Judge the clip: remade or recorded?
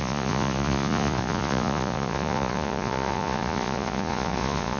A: remade